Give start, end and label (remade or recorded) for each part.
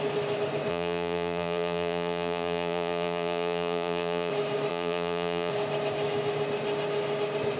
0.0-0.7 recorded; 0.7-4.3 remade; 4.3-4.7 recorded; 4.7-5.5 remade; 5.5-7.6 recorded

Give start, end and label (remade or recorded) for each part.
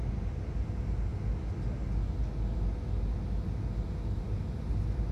0.0-5.1 recorded